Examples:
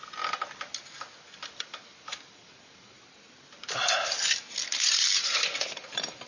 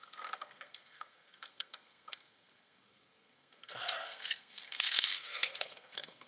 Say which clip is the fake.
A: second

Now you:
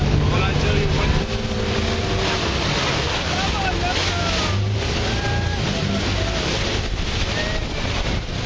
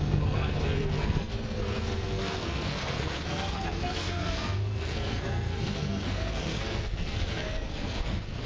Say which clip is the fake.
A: second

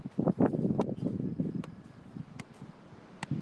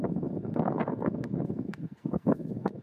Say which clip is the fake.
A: second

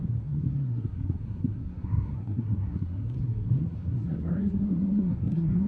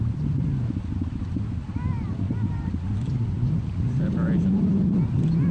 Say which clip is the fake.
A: first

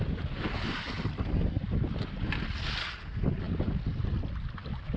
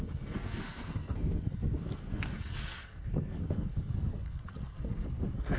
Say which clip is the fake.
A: second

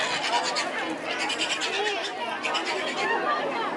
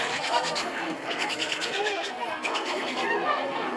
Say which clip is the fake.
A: second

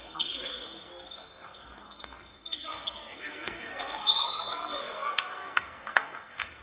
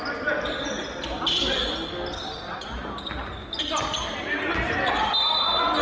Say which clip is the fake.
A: first